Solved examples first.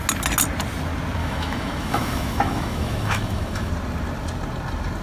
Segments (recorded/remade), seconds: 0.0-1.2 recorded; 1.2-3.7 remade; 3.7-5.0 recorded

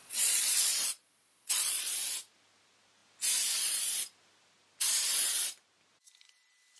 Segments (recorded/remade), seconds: 0.0-1.9 remade; 1.9-6.8 recorded

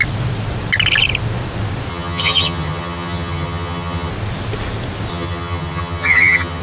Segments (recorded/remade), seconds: 0.0-1.9 recorded; 1.9-4.1 remade; 4.1-5.1 recorded; 5.1-6.6 remade

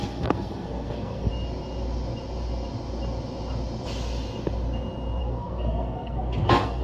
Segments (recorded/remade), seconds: 0.0-1.3 remade; 1.3-5.2 recorded; 5.2-6.8 remade

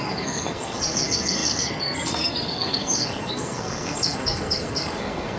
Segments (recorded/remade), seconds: 0.0-5.4 remade

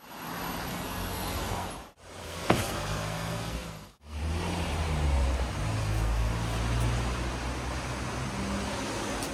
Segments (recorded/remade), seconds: 0.0-0.7 recorded; 0.7-1.7 remade; 1.7-2.2 recorded; 2.2-4.2 remade; 4.2-5.8 recorded; 5.8-6.3 remade; 6.3-9.3 recorded